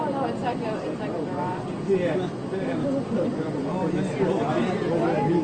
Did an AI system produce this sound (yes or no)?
no